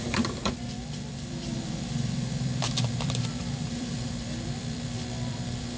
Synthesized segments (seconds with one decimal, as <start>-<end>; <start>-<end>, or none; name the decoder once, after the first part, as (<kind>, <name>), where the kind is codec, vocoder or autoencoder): 0.0-5.8 (vocoder, BigVGAN v2)